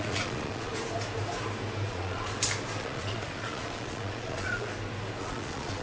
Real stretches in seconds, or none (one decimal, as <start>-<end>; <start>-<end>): 0.7-1.9; 2.3-2.8; 4.7-5.2